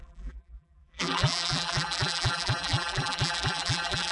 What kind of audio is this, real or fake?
fake